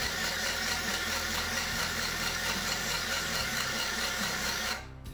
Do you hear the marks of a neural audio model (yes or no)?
yes